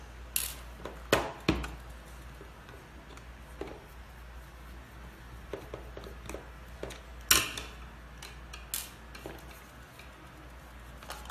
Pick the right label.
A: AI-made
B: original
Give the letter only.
B